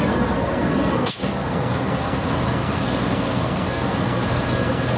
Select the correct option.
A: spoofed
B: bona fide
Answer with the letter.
A